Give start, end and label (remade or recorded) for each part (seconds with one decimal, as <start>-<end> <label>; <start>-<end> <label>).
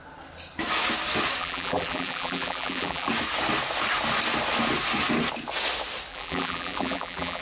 0.0-1.4 recorded; 1.4-3.1 remade; 3.1-6.1 recorded; 6.1-7.4 remade